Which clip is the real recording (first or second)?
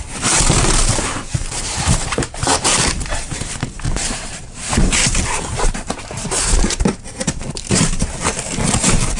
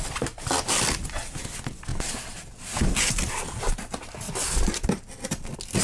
second